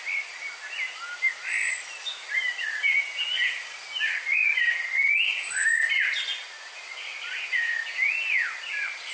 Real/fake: real